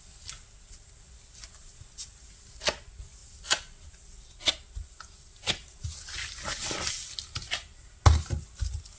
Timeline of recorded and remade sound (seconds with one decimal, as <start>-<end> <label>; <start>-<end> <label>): 0.0-9.0 recorded